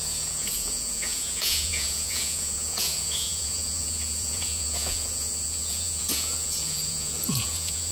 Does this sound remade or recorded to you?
remade